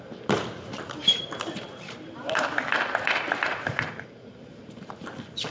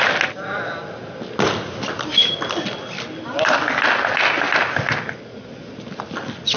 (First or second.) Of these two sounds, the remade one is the first